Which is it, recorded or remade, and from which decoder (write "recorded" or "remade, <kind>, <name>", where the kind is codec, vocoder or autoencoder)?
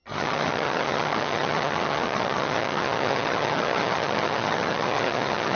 remade, vocoder, HiFi-GAN